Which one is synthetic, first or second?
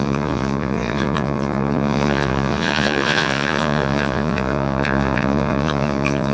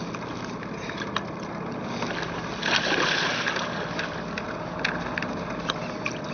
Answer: first